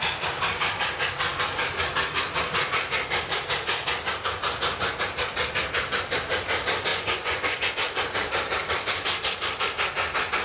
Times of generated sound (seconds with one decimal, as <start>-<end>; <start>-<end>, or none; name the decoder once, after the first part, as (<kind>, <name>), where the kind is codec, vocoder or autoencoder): 6.9-7.7 (vocoder, Vocos)